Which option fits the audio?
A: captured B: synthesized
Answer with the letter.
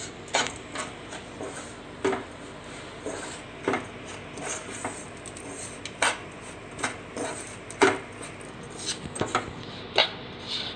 A